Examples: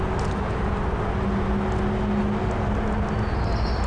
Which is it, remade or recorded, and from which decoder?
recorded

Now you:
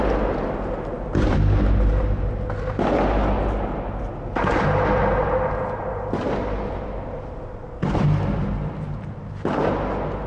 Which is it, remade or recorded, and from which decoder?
recorded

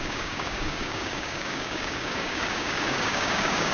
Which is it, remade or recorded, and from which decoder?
remade, codec, DAC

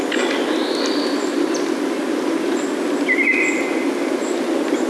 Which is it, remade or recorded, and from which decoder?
recorded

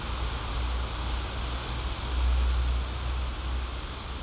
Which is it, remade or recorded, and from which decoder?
recorded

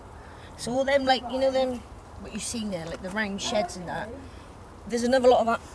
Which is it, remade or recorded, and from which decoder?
remade, vocoder, BigVGAN v2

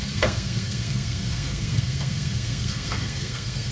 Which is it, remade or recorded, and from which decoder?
remade, codec, SNAC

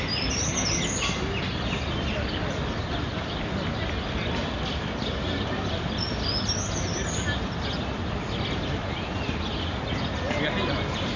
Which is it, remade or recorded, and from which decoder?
recorded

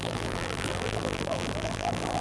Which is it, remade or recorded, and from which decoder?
remade, vocoder, BigVGAN v2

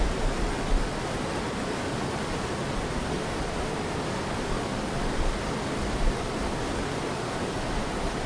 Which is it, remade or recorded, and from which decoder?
recorded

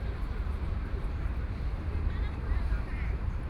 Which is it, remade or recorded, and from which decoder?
remade, vocoder, BigVGAN v2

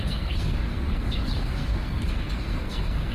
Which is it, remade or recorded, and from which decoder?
remade, codec, SNAC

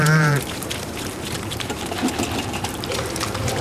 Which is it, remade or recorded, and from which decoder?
remade, vocoder, BigVGAN v2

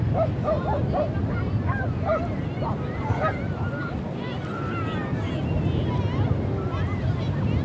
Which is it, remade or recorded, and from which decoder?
recorded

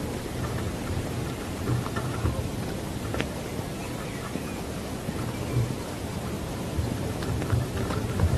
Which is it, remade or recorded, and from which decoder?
remade, vocoder, BigVGAN v2